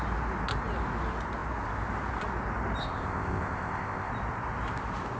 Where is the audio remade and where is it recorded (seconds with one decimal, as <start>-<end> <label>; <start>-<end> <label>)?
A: 0.0-2.8 recorded; 2.8-4.1 remade; 4.1-5.2 recorded